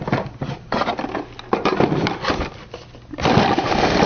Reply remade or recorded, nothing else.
recorded